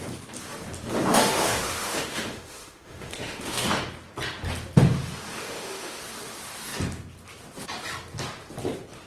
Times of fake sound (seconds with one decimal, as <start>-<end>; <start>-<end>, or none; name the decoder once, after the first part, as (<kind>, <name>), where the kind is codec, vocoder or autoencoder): 1.1-3.8 (autoencoder, DAC-VAE); 5.3-6.0